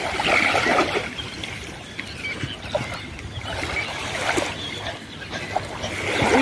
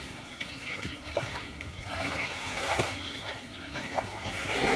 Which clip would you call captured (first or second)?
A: first